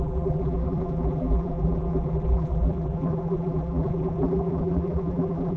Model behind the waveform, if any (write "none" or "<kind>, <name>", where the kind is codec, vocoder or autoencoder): vocoder, BigVGAN v2